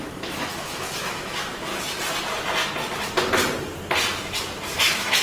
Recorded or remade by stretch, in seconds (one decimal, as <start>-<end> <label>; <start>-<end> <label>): 0.0-1.7 remade; 1.7-4.8 recorded; 4.8-5.2 remade